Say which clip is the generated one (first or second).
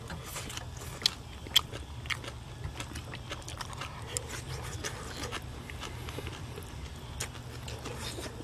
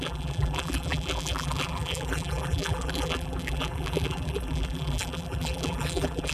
second